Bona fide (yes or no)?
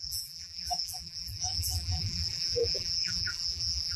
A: no